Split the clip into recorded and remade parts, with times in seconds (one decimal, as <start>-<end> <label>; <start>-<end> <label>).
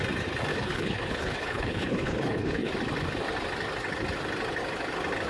0.0-0.5 recorded; 0.5-2.7 remade; 2.7-5.3 recorded